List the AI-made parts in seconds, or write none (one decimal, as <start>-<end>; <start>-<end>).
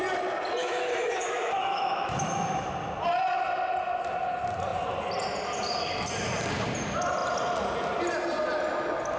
0.6-2.7